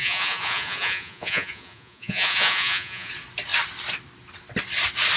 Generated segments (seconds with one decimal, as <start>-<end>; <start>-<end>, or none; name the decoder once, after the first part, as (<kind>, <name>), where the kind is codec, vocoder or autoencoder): 0.0-3.1 (vocoder, Vocos)